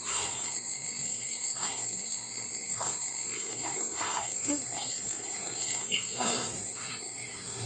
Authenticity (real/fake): fake